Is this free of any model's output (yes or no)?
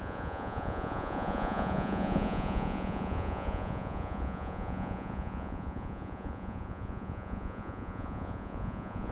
no